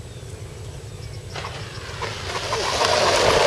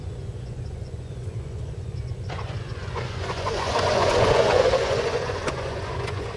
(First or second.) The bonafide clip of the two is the first